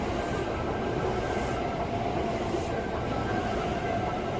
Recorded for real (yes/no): yes